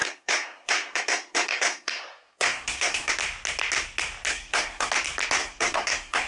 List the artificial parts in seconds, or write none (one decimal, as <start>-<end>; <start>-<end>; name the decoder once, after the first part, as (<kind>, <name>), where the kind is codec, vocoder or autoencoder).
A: 0.0-3.1 (codec, SNAC); 4.3-4.9; 5.4-6.3